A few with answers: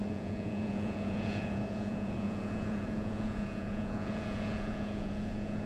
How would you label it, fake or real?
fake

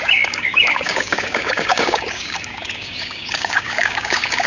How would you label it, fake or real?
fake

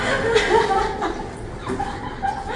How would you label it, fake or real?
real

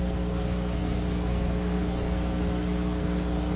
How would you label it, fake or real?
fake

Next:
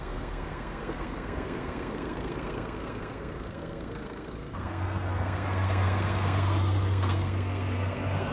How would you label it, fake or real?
fake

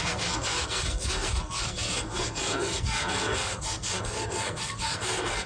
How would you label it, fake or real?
fake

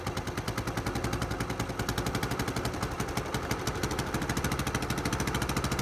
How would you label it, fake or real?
real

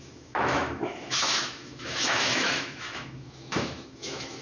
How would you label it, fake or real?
fake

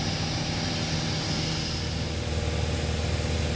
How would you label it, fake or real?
real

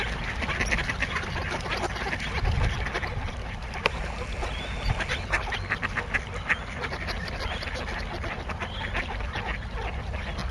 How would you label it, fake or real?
real